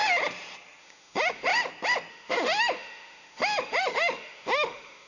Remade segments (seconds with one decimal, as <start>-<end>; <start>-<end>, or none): 0.8-1.5; 2.1-5.1